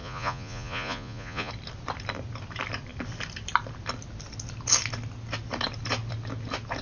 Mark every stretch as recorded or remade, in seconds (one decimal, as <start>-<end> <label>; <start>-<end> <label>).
0.0-1.5 remade; 1.5-6.8 recorded